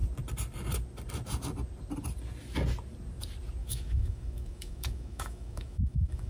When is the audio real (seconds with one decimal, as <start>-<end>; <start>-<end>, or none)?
0.0-3.6

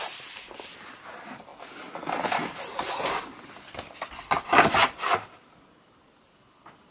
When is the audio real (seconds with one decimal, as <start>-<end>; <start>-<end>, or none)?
0.0-6.9

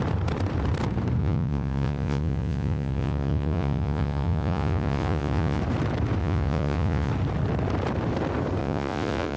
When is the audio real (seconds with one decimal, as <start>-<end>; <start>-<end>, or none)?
0.0-1.2; 5.6-6.2; 7.1-8.6

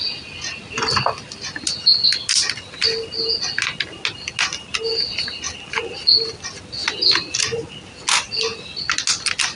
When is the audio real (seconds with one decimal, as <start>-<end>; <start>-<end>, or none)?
0.0-9.6

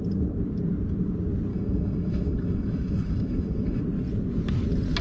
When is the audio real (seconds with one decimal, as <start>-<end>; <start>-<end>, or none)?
0.0-1.5; 3.8-5.0

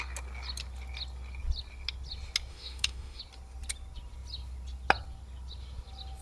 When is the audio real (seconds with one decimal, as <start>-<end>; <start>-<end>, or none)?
0.0-2.5; 3.2-6.2